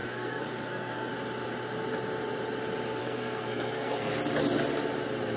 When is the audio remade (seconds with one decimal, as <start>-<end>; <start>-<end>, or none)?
0.0-1.1; 3.0-4.1